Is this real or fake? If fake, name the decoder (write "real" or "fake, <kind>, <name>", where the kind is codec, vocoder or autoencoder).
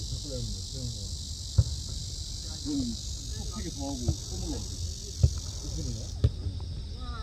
real